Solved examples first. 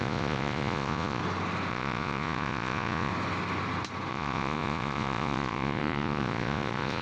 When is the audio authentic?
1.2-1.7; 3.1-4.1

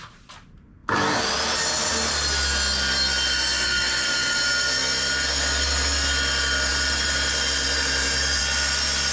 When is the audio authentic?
0.0-6.7; 8.4-9.1

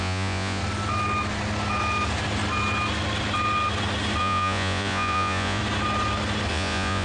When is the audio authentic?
0.6-4.2; 5.6-6.5

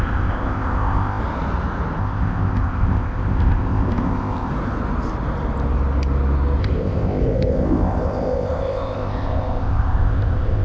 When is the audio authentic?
1.2-2.0; 4.5-6.6

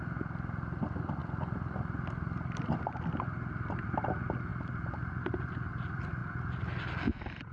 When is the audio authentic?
0.0-7.5

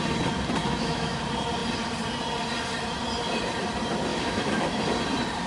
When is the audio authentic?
0.0-0.6; 1.2-4.1; 4.8-5.5

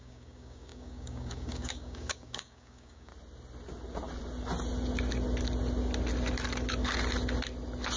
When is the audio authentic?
3.1-8.0